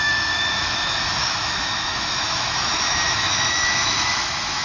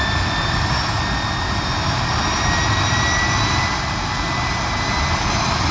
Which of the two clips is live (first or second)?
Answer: second